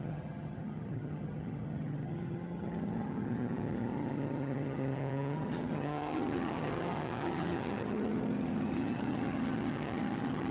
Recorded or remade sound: remade